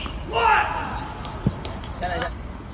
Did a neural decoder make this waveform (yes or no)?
no